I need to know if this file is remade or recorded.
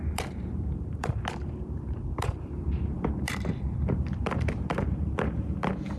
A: remade